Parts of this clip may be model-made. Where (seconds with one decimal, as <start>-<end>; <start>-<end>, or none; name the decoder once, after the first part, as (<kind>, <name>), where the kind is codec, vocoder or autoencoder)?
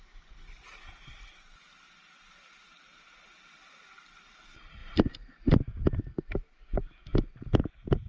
none